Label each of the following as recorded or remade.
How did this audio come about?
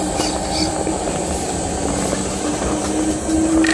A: recorded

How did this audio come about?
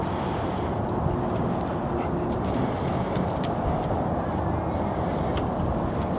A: recorded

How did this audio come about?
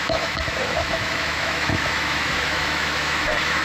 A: remade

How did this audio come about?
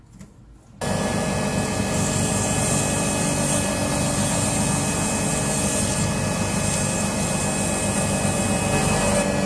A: recorded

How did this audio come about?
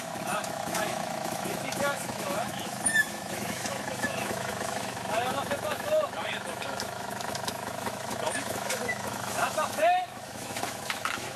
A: remade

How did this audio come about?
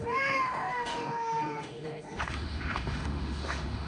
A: remade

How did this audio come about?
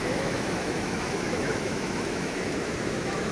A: remade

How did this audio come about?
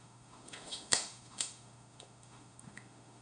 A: remade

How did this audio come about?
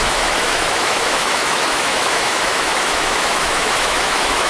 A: remade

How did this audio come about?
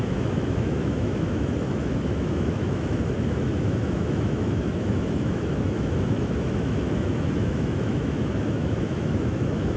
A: remade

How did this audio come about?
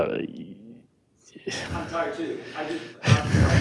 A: recorded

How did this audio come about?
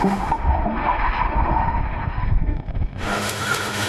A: remade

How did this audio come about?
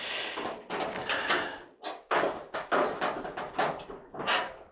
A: recorded